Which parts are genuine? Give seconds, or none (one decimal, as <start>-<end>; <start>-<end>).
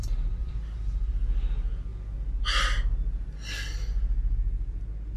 0.0-0.4; 1.1-5.2